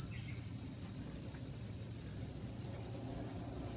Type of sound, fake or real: fake